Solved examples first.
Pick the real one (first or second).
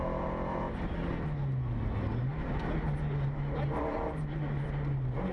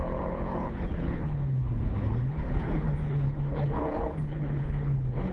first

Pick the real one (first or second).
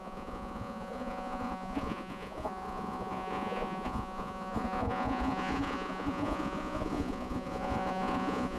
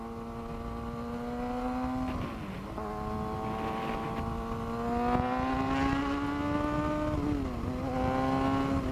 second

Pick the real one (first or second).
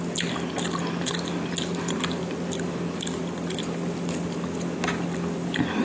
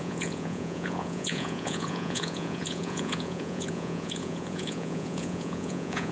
first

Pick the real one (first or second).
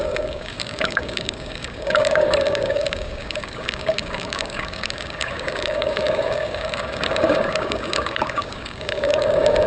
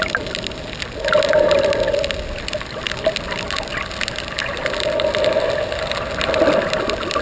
second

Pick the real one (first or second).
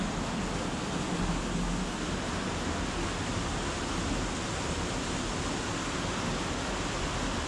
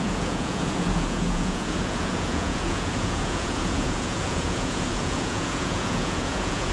first